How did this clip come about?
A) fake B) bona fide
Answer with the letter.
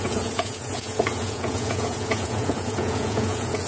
A